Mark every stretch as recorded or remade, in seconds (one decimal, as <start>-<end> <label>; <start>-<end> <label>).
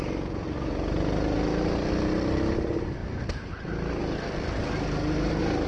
0.0-5.7 recorded